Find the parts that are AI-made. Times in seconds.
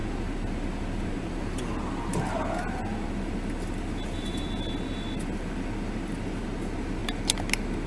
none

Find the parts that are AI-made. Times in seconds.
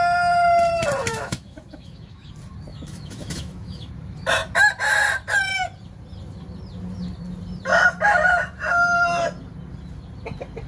1.1-2.3 (autoencoder, DAC-VAE); 2.7-3.9